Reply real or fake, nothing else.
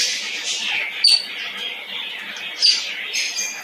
real